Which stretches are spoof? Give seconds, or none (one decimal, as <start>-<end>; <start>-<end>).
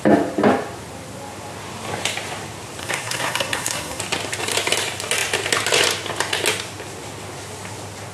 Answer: 2.8-4.0